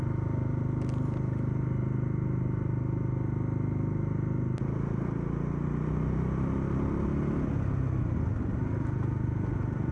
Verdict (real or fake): real